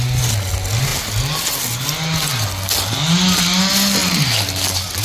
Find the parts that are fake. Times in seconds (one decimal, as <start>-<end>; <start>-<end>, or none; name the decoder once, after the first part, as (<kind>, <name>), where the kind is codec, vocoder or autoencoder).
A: none